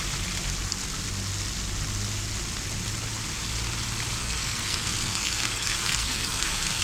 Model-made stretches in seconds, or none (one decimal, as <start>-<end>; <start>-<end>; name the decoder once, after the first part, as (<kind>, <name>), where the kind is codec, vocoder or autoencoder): 4.2-6.8 (codec, SNAC)